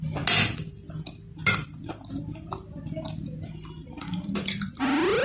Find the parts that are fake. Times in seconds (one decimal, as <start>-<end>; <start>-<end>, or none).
3.8-4.8